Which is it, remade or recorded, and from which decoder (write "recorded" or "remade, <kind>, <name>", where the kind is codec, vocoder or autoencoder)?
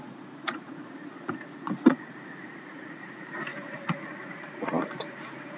remade, vocoder, Vocos